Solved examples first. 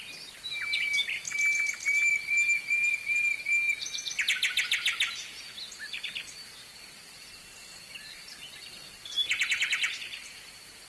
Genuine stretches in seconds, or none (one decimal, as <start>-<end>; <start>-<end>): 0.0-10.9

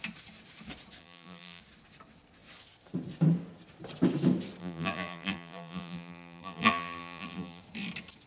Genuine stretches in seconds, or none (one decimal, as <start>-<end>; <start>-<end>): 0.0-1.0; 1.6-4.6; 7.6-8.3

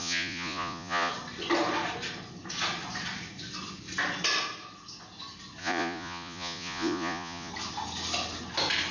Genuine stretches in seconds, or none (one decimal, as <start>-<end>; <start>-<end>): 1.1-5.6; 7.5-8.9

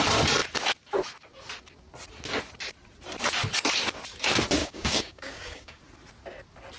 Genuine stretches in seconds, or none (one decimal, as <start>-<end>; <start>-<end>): 0.0-4.6; 5.8-6.8

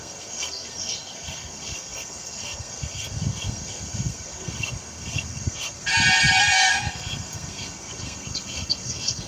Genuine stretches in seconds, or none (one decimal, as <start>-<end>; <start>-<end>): 5.9-6.4

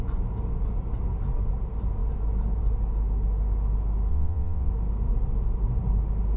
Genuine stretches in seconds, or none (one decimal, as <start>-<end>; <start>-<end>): 0.0-4.1; 4.7-6.4